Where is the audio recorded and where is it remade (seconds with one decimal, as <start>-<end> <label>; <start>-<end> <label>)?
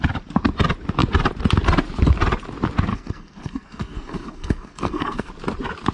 0.0-2.9 recorded; 2.9-5.3 remade; 5.3-5.9 recorded